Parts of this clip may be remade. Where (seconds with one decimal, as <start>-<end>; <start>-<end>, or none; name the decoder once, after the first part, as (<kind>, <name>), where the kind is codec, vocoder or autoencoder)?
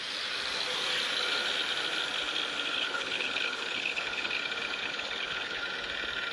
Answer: 2.7-4.3 (codec, HILCodec); 4.8-5.6